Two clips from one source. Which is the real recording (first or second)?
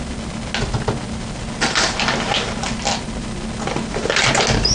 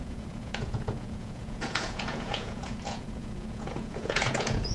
first